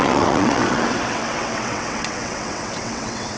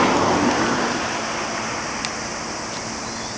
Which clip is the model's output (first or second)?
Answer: first